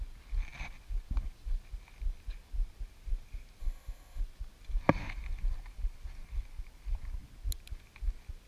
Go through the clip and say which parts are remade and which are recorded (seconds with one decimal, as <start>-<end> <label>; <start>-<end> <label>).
0.0-3.6 recorded; 3.6-4.2 remade; 4.2-8.5 recorded